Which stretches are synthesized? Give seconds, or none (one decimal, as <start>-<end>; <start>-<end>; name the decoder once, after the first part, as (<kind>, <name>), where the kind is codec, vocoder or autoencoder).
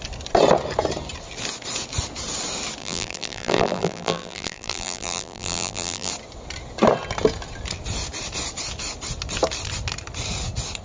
2.8-6.1 (vocoder, BigVGAN v2)